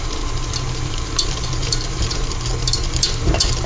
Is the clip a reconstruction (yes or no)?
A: yes